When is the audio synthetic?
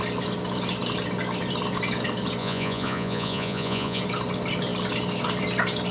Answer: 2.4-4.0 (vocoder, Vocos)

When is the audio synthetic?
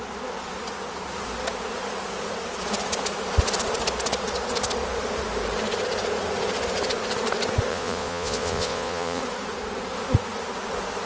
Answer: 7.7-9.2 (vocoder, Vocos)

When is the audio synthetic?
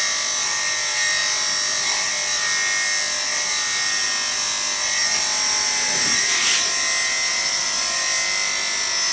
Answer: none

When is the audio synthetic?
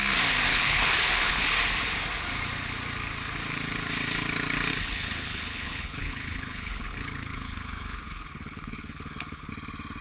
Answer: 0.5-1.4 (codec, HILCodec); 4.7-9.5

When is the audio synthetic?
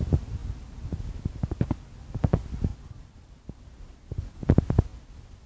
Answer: none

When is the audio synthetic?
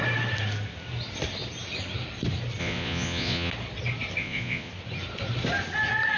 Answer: 2.6-3.5 (vocoder, Vocos); 4.2-4.7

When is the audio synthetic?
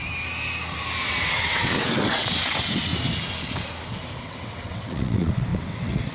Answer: 1.0-2.9 (vocoder, WaveNeXt); 4.2-6.1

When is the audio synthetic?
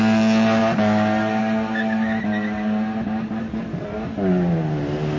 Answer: none